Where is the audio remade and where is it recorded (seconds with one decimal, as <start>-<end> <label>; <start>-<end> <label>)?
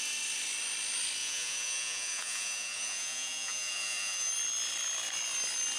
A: 0.0-1.2 recorded; 1.2-4.3 remade; 4.3-5.8 recorded